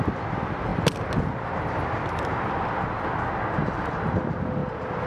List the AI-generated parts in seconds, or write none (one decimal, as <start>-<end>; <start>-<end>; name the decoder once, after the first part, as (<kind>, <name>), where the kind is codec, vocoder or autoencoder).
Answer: none

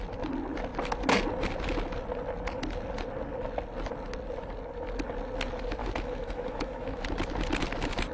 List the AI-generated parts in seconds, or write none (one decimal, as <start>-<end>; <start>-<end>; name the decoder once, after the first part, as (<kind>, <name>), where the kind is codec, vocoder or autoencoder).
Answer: 5.8-7.0 (autoencoder, DAC-VAE)

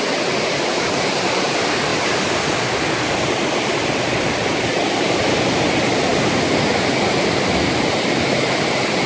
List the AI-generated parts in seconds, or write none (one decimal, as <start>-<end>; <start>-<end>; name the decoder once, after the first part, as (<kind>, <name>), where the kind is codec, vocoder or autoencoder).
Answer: none

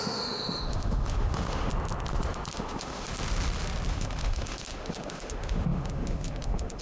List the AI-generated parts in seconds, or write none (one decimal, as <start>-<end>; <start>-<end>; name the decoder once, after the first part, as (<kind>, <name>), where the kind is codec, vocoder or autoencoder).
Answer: 0.0-1.7 (autoencoder, DAC-VAE); 2.5-3.1; 3.9-6.8

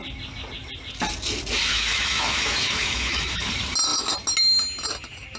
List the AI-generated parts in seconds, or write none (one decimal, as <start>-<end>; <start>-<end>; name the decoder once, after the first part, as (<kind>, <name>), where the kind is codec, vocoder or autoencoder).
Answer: 1.7-3.5 (autoencoder, DAC-VAE)

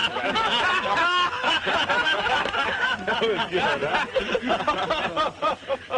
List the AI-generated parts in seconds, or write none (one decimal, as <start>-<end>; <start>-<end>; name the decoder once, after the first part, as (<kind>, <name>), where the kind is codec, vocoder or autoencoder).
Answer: 0.0-3.1 (autoencoder, DAC-VAE)

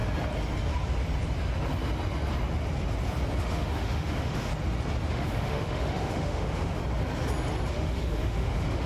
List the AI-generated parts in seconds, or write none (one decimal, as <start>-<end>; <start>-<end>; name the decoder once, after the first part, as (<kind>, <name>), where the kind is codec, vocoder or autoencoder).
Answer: 3.4-4.5 (autoencoder, DAC-VAE); 5.1-6.8; 7.7-8.9